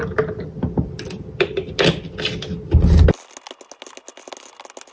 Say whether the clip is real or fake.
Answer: real